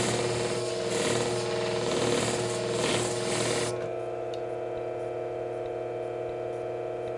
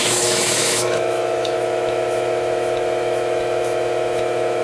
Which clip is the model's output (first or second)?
second